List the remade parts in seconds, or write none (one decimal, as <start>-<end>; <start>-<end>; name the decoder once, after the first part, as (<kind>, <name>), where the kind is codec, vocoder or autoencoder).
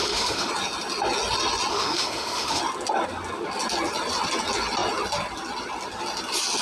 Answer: 0.0-0.5 (autoencoder, DAC-VAE); 1.7-2.6